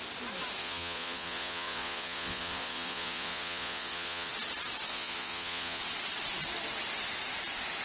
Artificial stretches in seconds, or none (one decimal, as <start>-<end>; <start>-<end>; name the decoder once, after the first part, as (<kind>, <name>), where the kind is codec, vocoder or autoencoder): 0.6-4.3 (vocoder, Vocos); 4.9-5.8